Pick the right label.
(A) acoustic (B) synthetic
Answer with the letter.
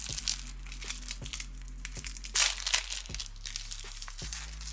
A